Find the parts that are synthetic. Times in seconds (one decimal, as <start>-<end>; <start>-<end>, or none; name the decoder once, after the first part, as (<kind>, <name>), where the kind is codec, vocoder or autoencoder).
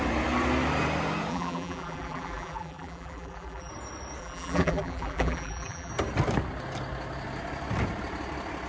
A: 1.3-3.7 (vocoder, BigVGAN v2); 4.2-5.9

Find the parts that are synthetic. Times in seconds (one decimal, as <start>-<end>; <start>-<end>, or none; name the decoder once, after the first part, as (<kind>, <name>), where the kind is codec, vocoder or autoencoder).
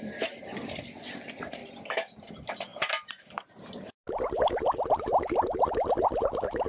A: 0.0-1.6 (vocoder, BigVGAN v2); 2.3-6.7